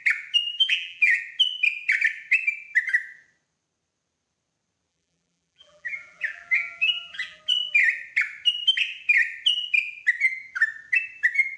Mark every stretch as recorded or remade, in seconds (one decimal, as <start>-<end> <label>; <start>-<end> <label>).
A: 0.0-0.5 recorded; 0.5-1.2 remade; 1.2-4.9 recorded; 4.9-7.4 remade; 7.4-11.6 recorded